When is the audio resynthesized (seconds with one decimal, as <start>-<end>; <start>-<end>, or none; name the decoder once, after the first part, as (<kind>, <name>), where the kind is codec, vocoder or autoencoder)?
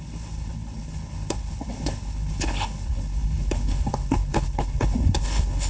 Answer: 0.0-5.7 (codec, HILCodec)